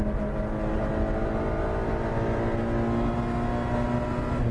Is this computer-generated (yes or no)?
no